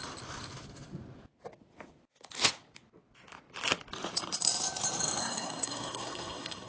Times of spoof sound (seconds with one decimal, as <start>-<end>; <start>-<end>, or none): 5.2-6.7